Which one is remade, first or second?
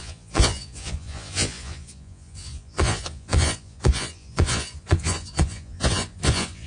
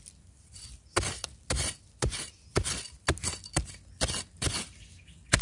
first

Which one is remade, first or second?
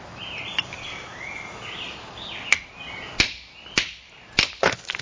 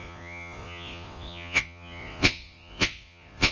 second